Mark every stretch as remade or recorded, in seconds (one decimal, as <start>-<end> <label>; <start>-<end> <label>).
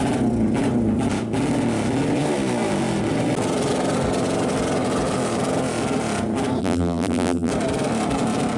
0.0-6.6 recorded; 6.6-7.5 remade; 7.5-8.6 recorded